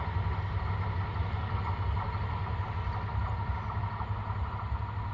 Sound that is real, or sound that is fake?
real